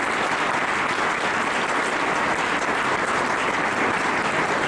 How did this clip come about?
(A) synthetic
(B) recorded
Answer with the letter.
B